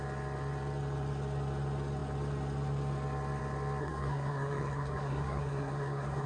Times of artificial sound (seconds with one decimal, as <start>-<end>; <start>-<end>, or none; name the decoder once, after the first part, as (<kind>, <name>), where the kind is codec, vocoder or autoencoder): 3.8-6.3 (codec, SNAC)